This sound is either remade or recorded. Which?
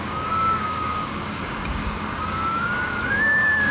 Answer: remade